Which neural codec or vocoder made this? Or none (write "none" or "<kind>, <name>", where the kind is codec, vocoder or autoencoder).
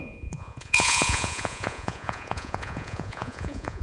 vocoder, Vocos